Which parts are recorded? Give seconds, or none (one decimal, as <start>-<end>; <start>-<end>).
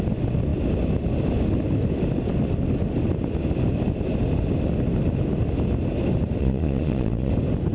0.0-6.4; 7.3-7.7